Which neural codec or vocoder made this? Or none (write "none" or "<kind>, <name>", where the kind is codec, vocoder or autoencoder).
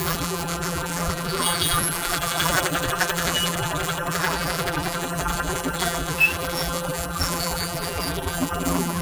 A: vocoder, BigVGAN v2